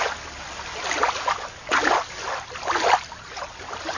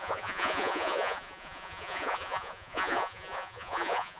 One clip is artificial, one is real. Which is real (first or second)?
first